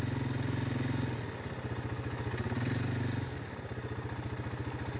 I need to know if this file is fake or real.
real